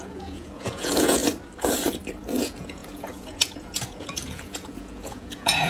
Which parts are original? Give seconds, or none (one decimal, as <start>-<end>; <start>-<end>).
1.2-2.4